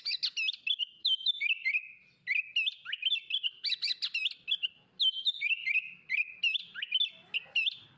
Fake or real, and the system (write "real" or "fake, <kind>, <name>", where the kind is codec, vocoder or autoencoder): real